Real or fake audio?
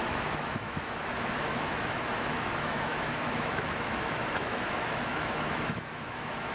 fake